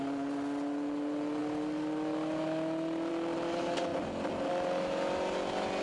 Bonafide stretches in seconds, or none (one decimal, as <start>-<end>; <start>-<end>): 0.0-5.8